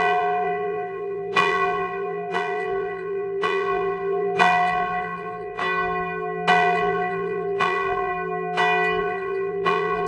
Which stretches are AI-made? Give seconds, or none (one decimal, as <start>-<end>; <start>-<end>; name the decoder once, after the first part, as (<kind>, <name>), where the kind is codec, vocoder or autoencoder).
0.0-5.6 (vocoder, BigVGAN v2); 6.5-8.1; 9.0-10.1